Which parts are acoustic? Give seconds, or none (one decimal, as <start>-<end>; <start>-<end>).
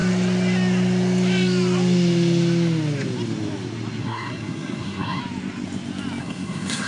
0.0-4.0; 5.2-6.2